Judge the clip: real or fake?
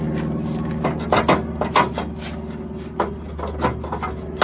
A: real